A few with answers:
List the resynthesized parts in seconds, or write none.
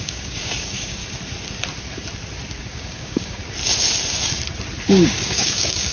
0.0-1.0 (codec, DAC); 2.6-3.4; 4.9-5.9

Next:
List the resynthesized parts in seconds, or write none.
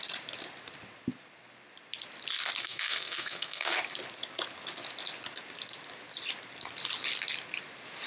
2.6-3.8 (codec, SNAC)